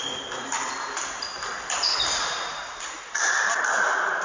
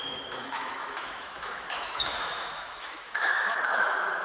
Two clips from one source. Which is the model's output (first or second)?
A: second